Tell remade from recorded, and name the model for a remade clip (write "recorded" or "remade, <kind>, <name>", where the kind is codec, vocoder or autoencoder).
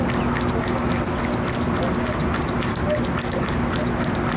recorded